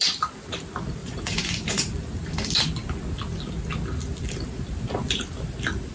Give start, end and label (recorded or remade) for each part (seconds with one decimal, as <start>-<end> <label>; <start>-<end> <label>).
0.0-1.0 recorded; 1.0-2.1 remade; 2.1-5.9 recorded